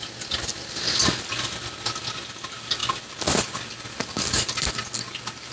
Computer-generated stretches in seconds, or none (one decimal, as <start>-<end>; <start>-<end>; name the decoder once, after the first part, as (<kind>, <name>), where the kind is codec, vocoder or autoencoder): none